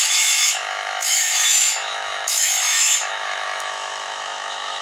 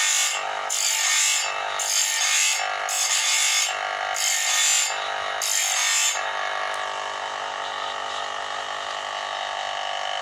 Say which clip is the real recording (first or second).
second